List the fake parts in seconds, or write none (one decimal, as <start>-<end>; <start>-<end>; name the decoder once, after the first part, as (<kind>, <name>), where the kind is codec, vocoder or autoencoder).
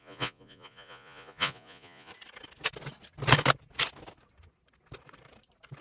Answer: 0.0-2.1 (vocoder, Vocos)